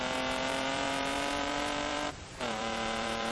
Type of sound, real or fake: fake